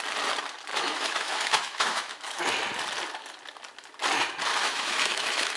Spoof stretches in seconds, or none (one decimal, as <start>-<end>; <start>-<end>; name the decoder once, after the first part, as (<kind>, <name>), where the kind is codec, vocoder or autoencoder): 0.7-2.4 (autoencoder, DAC-VAE); 4.6-5.6